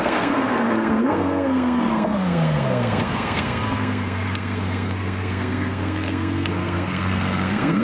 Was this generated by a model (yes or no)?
yes